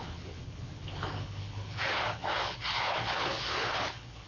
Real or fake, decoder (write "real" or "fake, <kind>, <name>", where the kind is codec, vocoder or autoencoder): fake, codec, HILCodec